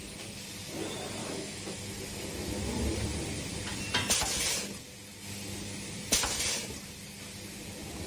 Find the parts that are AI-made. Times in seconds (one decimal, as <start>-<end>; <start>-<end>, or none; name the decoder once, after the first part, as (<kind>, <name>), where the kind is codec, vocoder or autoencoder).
1.2-1.8 (autoencoder, DAC-VAE)